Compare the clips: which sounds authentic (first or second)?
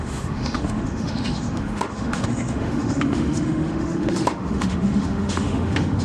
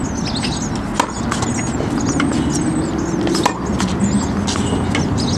second